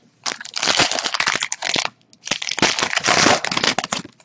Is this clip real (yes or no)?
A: yes